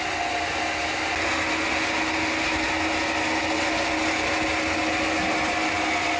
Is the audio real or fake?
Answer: real